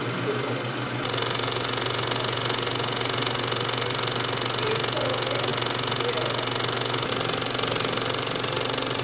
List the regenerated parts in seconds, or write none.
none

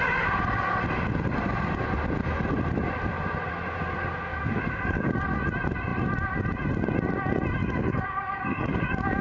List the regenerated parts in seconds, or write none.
4.3-5.1; 7.6-9.2

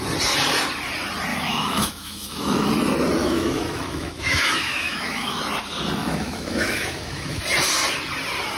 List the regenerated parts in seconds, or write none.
1.3-2.7; 3.2-5.4; 6.0-7.4

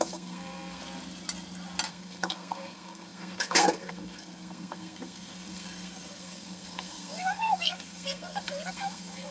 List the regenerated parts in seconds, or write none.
0.0-0.8; 1.9-9.3